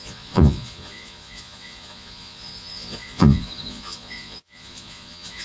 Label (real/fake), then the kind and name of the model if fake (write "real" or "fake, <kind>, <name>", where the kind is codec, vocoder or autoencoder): fake, vocoder, Vocos